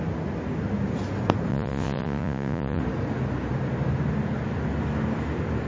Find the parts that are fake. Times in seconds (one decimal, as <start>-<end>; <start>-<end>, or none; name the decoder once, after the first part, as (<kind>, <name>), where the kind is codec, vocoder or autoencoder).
1.5-2.8 (vocoder, Vocos)